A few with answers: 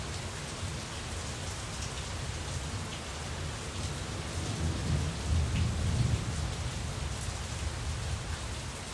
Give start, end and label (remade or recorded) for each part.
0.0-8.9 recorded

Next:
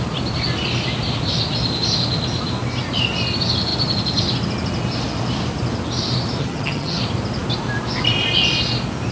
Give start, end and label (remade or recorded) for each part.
0.0-6.4 recorded; 6.4-7.0 remade; 7.0-9.1 recorded

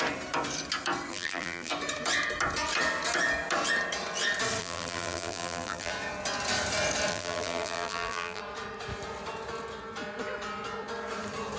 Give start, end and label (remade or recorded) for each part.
0.0-1.1 recorded; 1.1-1.7 remade; 1.7-4.6 recorded; 4.6-5.9 remade; 5.9-7.1 recorded; 7.1-8.4 remade; 8.4-11.6 recorded

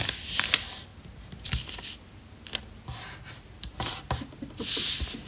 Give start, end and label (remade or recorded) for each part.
0.0-0.9 recorded; 0.9-4.1 remade; 4.1-5.3 recorded

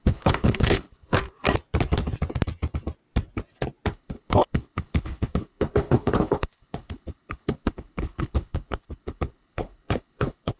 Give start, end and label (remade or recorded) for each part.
0.0-1.2 remade; 1.2-3.9 recorded; 3.9-10.6 remade

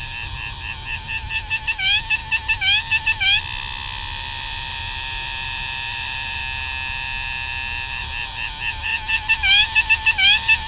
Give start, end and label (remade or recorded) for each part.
0.0-2.2 remade; 2.2-3.0 recorded; 3.0-6.4 remade; 6.4-8.0 recorded; 8.0-10.7 remade

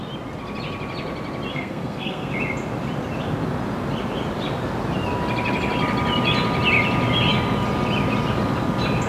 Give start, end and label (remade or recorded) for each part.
0.0-1.5 recorded; 1.5-2.3 remade; 2.3-9.1 recorded